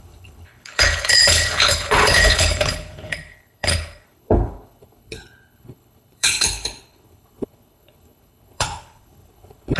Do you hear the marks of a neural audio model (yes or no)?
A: yes